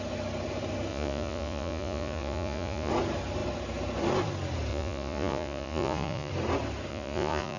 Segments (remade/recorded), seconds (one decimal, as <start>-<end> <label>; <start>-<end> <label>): 0.0-0.9 recorded; 0.9-2.9 remade; 2.9-4.7 recorded; 4.7-6.3 remade; 6.3-6.9 recorded; 6.9-7.6 remade

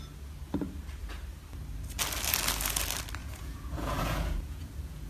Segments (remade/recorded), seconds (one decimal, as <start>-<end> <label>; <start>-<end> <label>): 0.0-3.2 recorded; 3.2-5.1 remade